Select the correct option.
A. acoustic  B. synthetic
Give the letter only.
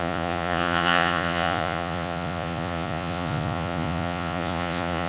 B